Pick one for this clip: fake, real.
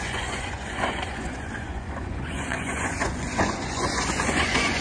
fake